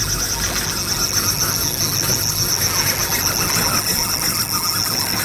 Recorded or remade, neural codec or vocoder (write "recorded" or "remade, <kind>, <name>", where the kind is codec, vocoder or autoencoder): recorded